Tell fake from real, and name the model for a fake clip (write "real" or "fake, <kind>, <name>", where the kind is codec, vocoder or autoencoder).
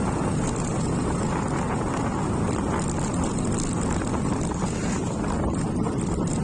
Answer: real